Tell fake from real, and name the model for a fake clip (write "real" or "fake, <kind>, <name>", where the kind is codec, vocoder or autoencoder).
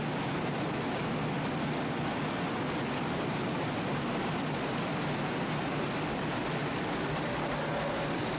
real